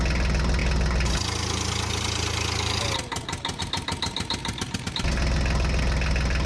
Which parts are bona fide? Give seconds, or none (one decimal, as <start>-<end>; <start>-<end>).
0.0-6.5